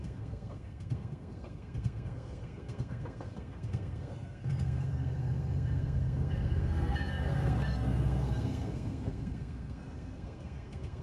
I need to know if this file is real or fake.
fake